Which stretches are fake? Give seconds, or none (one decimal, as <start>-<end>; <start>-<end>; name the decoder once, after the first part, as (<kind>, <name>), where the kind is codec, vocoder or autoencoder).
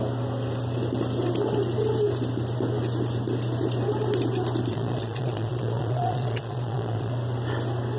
4.7-7.1 (vocoder, Vocos)